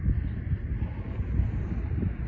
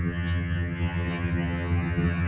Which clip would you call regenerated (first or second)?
second